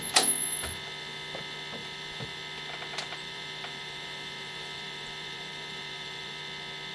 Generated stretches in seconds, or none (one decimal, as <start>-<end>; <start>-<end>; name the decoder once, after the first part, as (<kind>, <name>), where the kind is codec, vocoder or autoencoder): 1.8-2.4 (vocoder, BigVGAN v2); 3.0-6.4